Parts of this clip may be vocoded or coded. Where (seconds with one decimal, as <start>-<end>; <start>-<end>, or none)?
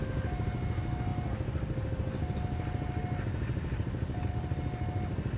none